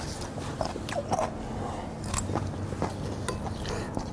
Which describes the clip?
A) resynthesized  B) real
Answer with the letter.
B